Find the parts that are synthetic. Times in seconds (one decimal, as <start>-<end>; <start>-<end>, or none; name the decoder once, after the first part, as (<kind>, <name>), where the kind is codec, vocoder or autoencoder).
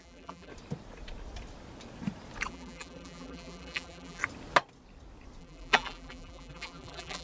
0.0-0.5 (vocoder, BigVGAN v2); 2.5-4.2; 5.4-7.2